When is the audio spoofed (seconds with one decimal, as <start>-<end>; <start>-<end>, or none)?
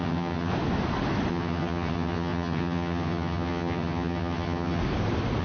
0.0-0.5; 1.3-4.8